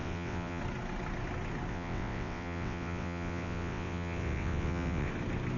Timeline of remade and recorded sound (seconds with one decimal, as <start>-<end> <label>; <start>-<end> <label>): 0.0-0.6 remade; 0.6-1.7 recorded; 1.7-5.1 remade; 5.1-5.6 recorded